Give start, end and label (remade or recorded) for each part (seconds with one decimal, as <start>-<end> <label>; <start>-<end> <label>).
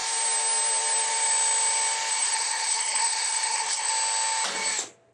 0.0-2.1 recorded; 2.1-3.9 remade; 3.9-5.1 recorded